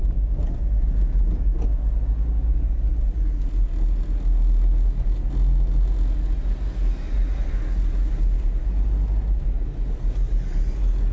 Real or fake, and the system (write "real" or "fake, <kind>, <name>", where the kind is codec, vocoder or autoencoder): real